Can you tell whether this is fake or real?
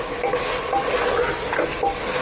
real